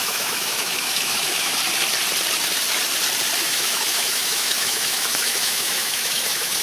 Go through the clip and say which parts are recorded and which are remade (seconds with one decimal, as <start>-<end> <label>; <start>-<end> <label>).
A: 0.0-1.5 remade; 1.5-3.4 recorded; 3.4-6.6 remade